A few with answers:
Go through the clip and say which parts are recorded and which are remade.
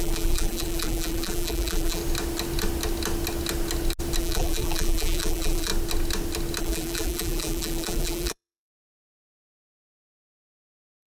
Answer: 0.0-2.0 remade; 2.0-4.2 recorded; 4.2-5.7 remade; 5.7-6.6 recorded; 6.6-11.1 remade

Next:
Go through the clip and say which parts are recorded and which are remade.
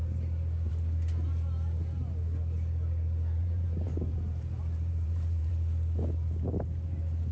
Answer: 0.0-3.4 recorded; 3.4-5.5 remade; 5.5-7.3 recorded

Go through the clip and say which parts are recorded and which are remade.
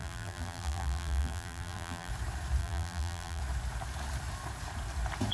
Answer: 0.0-2.1 remade; 2.1-2.6 recorded; 2.6-3.4 remade; 3.4-5.3 recorded